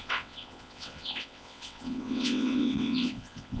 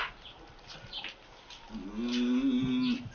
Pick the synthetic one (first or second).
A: first